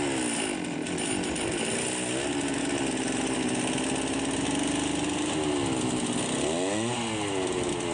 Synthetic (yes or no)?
no